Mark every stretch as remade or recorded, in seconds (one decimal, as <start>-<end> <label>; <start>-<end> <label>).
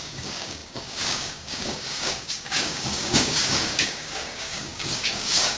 0.0-5.6 remade